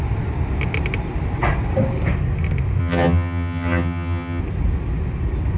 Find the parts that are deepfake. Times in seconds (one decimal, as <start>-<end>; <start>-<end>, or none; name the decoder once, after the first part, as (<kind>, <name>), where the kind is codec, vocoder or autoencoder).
2.8-4.4 (vocoder, HiFi-GAN)